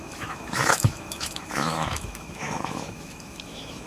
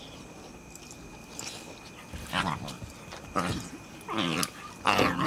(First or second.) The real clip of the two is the second